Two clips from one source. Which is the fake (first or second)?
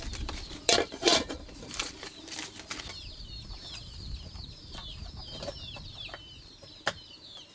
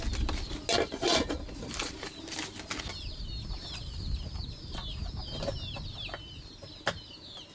first